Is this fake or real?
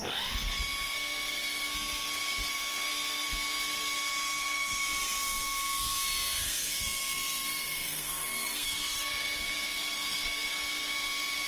fake